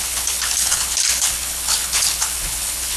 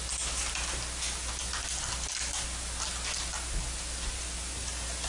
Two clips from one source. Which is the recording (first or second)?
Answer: second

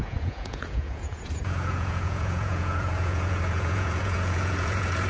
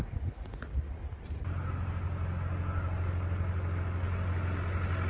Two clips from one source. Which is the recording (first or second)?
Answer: second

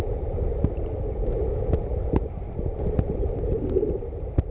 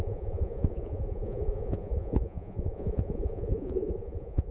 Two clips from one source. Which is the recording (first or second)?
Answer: first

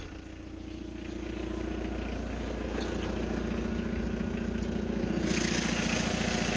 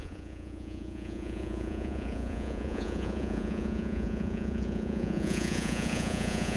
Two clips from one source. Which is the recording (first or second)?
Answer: first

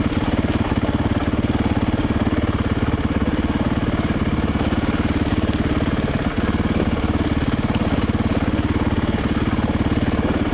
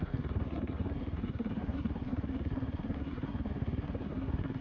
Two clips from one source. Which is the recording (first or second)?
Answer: first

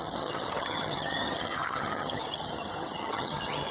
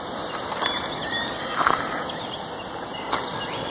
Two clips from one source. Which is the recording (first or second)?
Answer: second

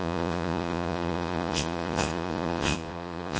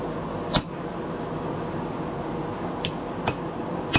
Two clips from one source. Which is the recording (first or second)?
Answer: second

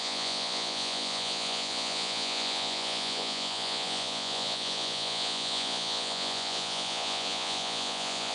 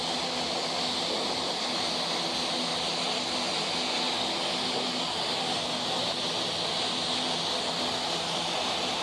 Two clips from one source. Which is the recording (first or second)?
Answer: second